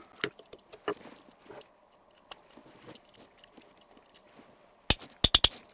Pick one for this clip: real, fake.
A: real